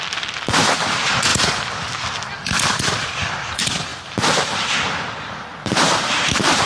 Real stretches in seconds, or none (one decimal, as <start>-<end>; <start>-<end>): 0.0-5.5